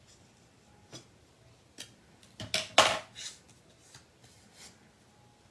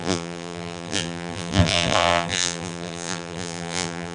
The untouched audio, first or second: first